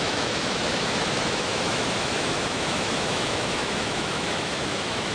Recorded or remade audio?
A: remade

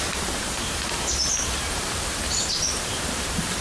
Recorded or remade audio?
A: remade